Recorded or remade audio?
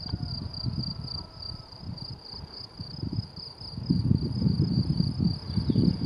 recorded